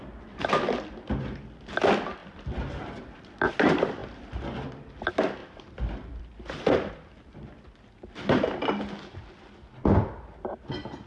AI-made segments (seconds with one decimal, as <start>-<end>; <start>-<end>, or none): 2.2-3.0; 5.4-6.9